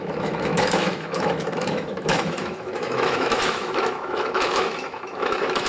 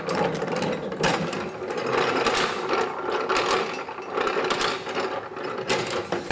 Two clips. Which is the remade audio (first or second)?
first